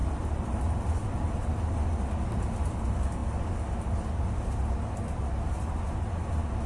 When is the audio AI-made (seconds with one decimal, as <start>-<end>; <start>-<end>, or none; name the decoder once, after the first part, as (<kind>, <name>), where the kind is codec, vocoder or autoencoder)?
none

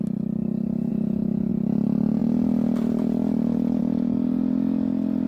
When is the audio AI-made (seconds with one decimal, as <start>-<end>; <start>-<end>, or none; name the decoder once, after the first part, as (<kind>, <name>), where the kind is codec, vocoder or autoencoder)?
0.9-1.5 (vocoder, Vocos)